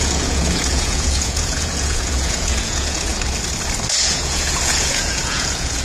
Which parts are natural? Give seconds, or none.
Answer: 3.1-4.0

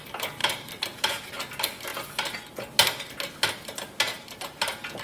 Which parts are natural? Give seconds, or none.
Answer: 0.0-0.4; 1.3-4.1; 4.6-5.0

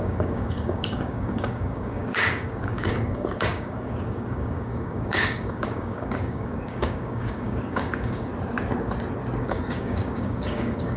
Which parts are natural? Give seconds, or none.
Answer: 8.3-9.4

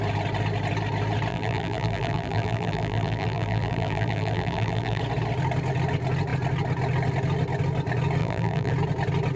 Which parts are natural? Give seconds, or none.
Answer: 0.0-1.3; 5.0-8.2; 8.7-9.4

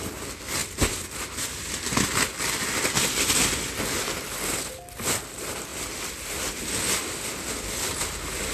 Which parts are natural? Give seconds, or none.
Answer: 0.0-0.6; 1.8-5.7; 6.6-8.5

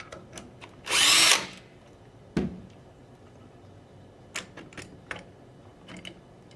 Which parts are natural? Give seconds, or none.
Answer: 0.0-6.6